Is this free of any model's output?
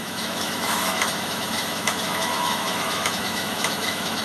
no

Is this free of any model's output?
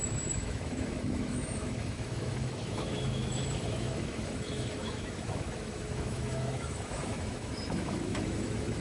no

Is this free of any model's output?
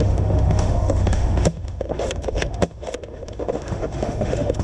no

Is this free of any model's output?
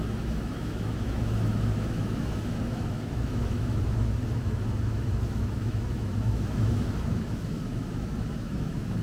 no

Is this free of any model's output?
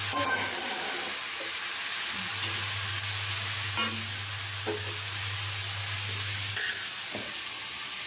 yes